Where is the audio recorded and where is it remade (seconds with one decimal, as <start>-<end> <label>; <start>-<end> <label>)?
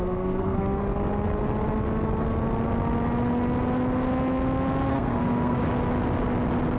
0.0-0.8 remade; 0.8-4.9 recorded; 4.9-5.6 remade; 5.6-6.8 recorded